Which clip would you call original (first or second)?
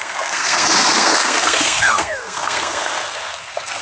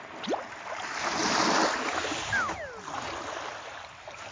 second